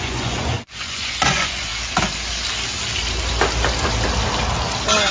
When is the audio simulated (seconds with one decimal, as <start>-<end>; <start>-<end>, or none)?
0.0-1.7